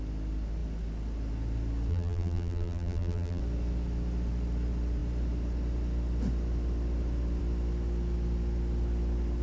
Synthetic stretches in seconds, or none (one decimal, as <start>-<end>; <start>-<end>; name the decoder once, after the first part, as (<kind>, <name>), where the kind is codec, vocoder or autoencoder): 1.9-3.4 (vocoder, BigVGAN v2)